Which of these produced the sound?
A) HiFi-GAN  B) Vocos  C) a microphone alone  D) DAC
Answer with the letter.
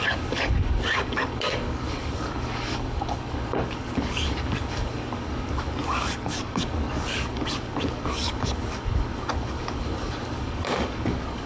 D